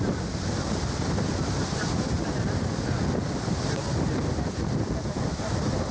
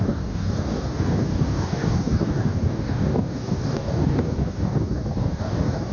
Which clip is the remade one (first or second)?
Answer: second